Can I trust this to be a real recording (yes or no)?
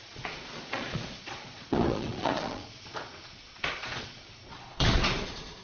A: no